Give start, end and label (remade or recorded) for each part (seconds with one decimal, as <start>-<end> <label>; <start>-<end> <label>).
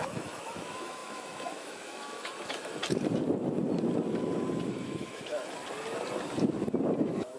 0.0-2.8 remade; 2.8-4.7 recorded; 4.7-5.6 remade; 5.6-7.0 recorded; 7.0-7.4 remade